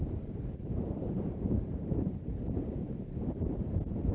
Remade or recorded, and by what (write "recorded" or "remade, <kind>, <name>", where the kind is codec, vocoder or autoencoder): remade, vocoder, BigVGAN v2